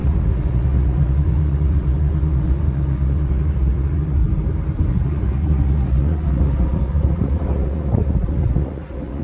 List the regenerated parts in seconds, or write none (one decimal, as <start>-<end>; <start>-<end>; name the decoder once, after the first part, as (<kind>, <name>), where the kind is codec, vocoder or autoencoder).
0.0-4.2 (vocoder, Vocos); 4.9-9.2